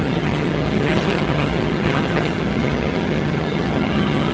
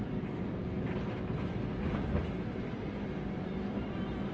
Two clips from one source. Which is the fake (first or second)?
first